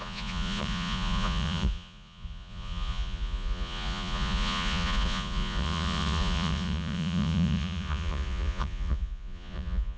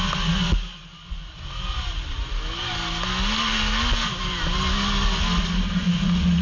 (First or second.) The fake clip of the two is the first